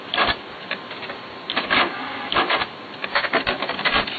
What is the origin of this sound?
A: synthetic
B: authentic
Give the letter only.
B